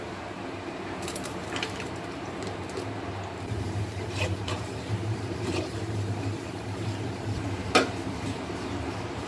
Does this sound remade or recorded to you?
remade